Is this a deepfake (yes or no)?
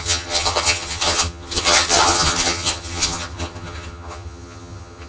yes